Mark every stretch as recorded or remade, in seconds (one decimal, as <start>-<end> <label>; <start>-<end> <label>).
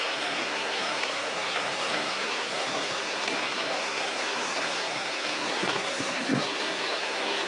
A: 0.0-7.5 remade